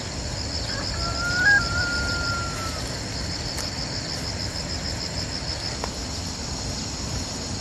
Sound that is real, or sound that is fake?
real